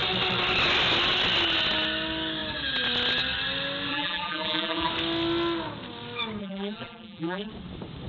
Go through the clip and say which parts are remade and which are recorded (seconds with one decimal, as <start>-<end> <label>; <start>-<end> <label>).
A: 0.0-3.9 recorded; 3.9-4.9 remade; 4.9-6.4 recorded; 6.4-7.5 remade; 7.5-8.1 recorded